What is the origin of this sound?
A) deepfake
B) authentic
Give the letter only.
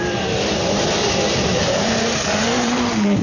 A